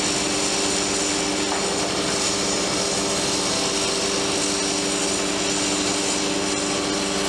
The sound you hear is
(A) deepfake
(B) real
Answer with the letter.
B